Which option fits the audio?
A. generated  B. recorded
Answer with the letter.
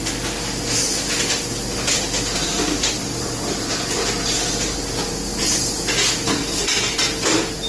B